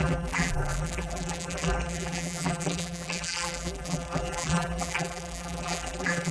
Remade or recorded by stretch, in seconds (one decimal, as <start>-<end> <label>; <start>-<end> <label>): 0.0-6.3 remade